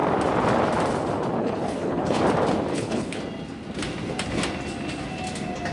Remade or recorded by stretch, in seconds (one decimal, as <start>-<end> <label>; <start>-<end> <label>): 0.0-1.4 recorded; 1.4-2.2 remade; 2.2-2.7 recorded; 2.7-3.2 remade; 3.2-5.7 recorded